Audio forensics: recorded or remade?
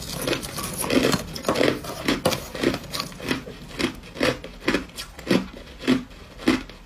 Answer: recorded